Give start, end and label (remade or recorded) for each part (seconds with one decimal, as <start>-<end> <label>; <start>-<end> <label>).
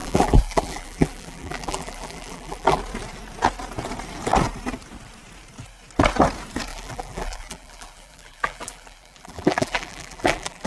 0.0-2.8 remade; 2.8-6.7 recorded; 6.7-10.7 remade